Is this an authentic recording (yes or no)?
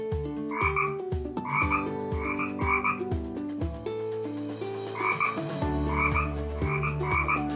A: yes